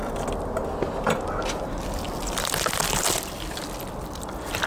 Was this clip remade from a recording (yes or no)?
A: no